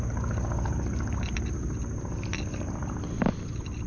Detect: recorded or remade recorded